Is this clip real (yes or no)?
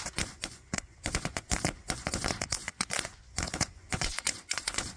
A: no